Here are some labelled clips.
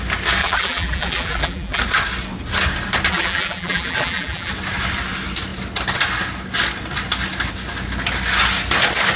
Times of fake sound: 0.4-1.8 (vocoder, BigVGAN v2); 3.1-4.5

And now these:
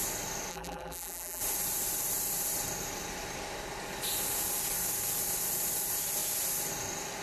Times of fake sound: 0.5-1.4 (vocoder, BigVGAN v2)